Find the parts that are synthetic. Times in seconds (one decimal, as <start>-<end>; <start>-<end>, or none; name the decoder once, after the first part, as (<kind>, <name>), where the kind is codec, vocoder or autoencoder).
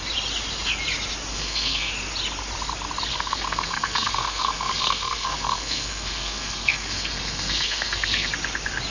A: 1.3-1.9 (codec, SNAC); 3.1-8.3